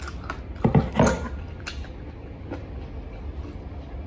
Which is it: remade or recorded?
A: recorded